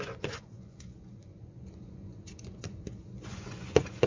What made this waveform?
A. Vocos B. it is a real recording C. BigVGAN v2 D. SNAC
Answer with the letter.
A